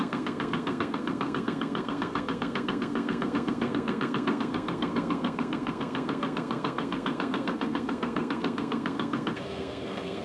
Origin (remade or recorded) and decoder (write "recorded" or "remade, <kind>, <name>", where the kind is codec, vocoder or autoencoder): remade, codec, SNAC